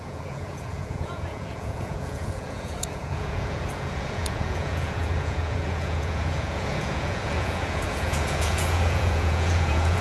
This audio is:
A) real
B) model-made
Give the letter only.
B